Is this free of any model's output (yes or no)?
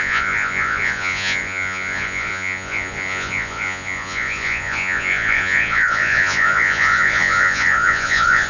no